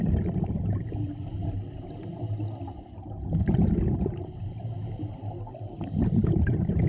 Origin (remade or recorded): recorded